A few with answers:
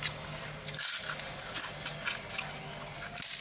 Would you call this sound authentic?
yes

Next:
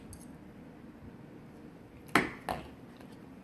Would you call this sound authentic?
yes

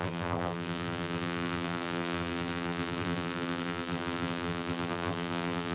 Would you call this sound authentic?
no